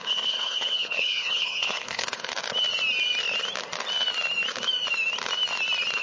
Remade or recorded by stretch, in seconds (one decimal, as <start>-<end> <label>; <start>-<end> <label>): 0.0-2.3 remade; 2.3-6.0 recorded